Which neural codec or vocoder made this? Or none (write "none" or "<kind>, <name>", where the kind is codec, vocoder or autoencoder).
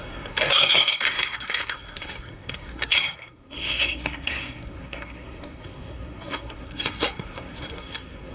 codec, SNAC